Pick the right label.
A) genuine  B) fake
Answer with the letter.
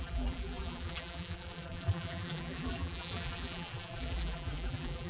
B